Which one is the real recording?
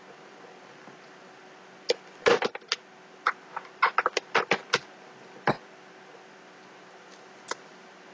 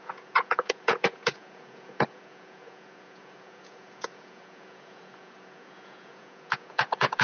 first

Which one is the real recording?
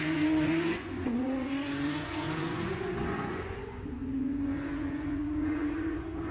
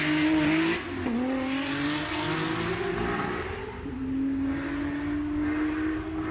second